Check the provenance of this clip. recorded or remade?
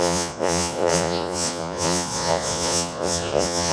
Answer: remade